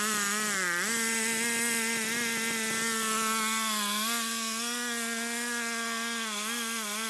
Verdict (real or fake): real